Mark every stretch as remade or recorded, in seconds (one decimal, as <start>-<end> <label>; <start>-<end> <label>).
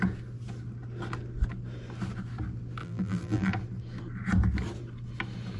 0.0-2.8 recorded; 2.8-3.5 remade; 3.5-5.6 recorded